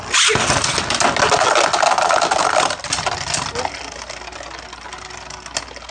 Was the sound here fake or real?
real